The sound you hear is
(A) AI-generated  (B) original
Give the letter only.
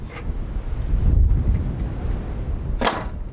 B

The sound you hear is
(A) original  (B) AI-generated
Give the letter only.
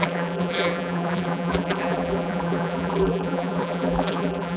B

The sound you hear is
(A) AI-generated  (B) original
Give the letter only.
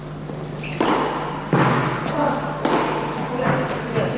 B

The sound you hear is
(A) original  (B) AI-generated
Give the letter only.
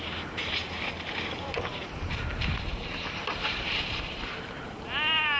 B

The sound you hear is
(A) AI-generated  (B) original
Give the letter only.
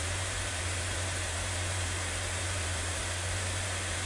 A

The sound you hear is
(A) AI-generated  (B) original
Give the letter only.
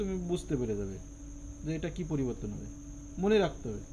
B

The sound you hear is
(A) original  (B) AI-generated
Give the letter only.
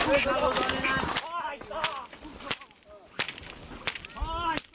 A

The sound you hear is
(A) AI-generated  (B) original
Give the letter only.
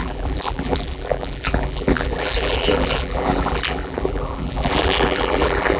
A